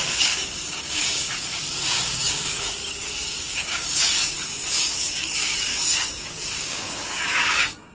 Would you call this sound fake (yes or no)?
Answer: yes